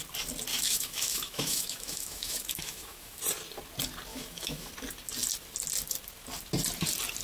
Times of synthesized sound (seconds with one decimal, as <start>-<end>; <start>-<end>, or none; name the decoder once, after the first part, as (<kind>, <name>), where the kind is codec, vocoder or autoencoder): 0.5-3.2 (autoencoder, DAC-VAE); 4.1-4.7